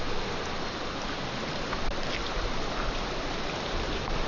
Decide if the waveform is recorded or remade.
recorded